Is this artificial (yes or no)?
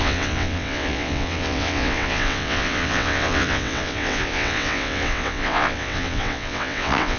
yes